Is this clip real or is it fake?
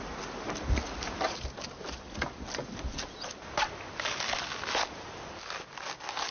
real